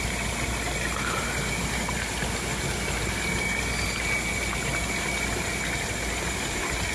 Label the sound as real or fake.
real